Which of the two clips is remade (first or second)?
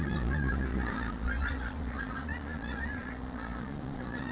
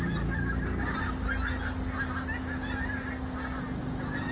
first